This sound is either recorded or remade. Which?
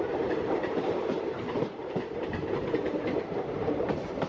remade